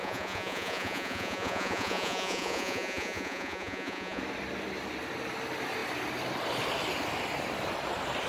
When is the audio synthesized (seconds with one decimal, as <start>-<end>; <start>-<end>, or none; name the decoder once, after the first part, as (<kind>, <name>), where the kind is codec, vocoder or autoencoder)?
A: 0.0-4.2 (vocoder, Vocos)